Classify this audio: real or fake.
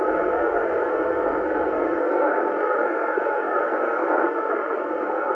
fake